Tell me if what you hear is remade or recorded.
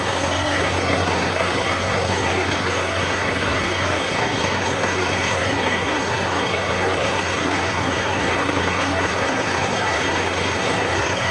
remade